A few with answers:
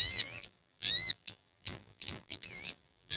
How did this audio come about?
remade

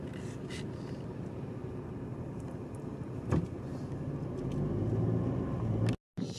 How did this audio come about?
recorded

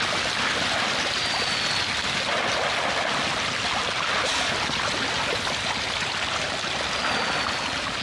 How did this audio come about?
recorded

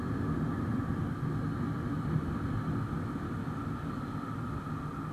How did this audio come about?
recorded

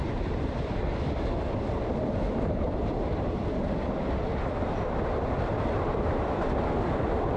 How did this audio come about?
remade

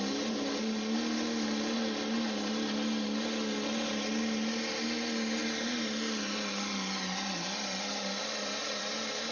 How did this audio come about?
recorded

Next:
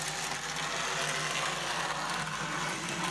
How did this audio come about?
recorded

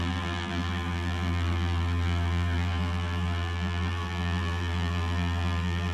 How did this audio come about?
remade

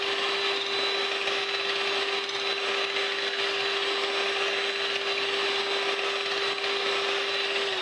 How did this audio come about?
recorded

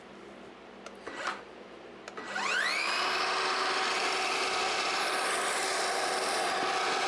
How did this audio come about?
recorded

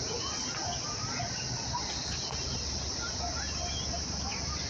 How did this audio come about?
recorded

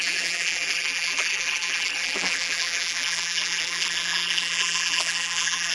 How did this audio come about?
remade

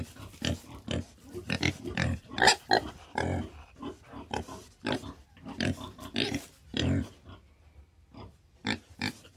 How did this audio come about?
remade